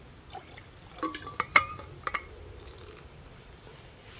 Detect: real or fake fake